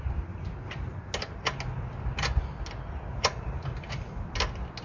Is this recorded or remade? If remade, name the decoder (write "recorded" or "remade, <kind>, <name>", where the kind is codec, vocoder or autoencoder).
recorded